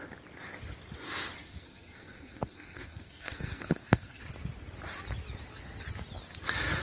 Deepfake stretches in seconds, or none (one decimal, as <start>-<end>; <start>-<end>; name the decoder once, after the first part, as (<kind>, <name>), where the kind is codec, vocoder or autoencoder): 1.4-4.2 (codec, SNAC)